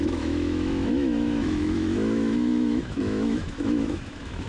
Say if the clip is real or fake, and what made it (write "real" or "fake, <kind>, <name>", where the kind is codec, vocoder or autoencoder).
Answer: fake, autoencoder, DAC-VAE